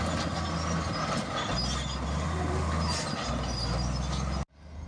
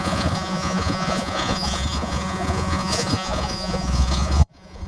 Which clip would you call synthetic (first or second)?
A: second